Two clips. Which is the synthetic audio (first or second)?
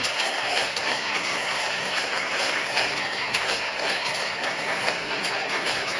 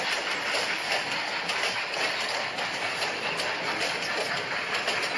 first